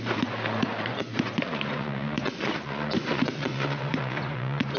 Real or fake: fake